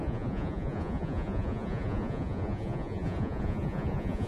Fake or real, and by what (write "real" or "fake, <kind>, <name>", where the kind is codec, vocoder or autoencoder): fake, vocoder, Vocos